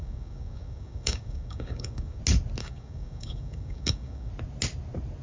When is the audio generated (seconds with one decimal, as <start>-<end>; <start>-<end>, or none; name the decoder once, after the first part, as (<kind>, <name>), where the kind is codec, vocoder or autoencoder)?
0.0-2.2 (codec, DAC); 2.6-4.3